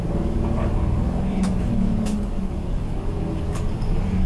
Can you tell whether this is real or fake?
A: fake